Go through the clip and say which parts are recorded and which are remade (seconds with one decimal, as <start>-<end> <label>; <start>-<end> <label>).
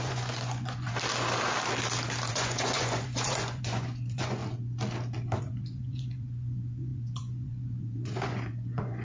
0.0-0.9 remade; 0.9-2.3 recorded; 2.3-4.4 remade; 4.4-5.4 recorded; 5.4-9.0 remade